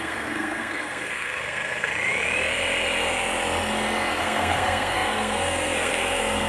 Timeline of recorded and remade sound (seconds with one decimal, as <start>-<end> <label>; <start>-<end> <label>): 0.0-1.9 remade; 1.9-4.2 recorded; 4.2-6.5 remade